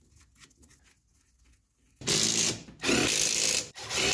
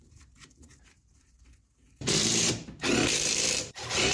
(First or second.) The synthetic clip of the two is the second